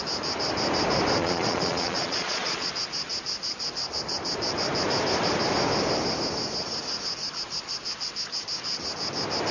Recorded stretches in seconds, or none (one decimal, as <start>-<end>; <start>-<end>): 0.0-1.2; 2.7-9.5